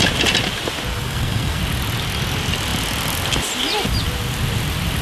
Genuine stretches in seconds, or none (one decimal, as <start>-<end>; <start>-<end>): 0.0-0.9; 1.6-5.0